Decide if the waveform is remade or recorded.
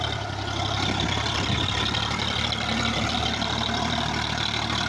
remade